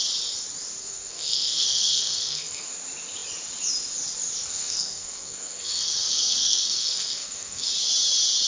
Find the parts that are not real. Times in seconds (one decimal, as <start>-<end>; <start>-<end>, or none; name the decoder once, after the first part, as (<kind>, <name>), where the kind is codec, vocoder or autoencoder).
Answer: 0.8-2.7 (codec, SNAC); 4.5-7.7